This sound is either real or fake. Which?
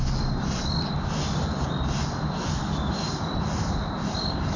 real